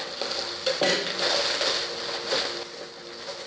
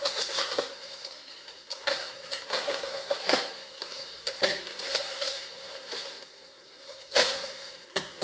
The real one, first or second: first